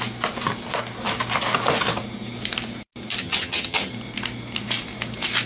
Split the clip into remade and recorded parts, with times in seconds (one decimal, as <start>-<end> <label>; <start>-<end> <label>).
0.0-3.2 recorded; 3.2-3.9 remade; 3.9-5.5 recorded